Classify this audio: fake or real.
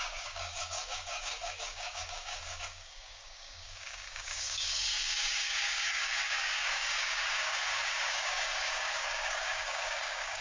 fake